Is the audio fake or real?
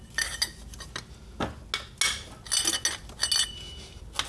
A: real